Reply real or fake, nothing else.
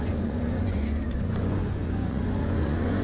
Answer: fake